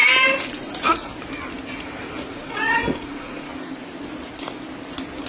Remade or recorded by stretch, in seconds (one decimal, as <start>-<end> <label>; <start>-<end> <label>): 0.0-0.5 recorded; 0.5-1.1 remade; 1.1-2.3 recorded; 2.3-3.5 remade; 3.5-5.3 recorded